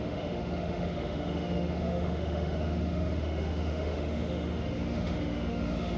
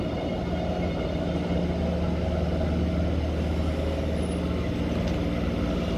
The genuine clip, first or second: second